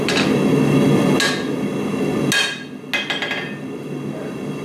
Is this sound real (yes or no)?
yes